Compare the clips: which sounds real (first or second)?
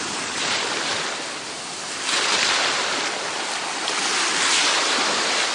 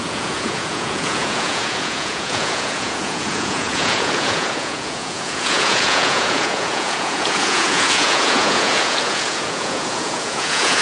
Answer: first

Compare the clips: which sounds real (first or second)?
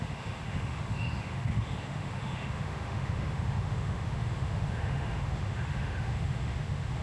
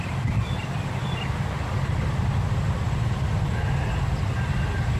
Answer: second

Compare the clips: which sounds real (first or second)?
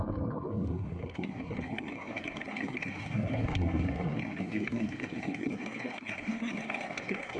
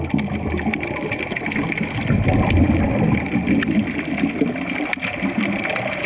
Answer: second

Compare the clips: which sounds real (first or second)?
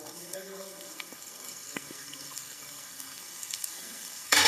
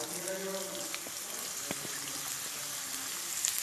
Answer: second